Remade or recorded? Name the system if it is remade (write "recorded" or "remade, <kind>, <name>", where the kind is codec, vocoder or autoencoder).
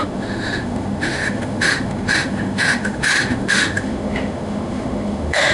remade, autoencoder, DAC-VAE